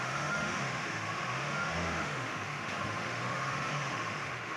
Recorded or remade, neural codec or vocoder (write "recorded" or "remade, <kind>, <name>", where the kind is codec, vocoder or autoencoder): remade, autoencoder, DAC-VAE